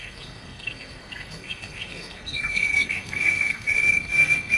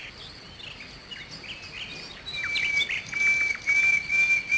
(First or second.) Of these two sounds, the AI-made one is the first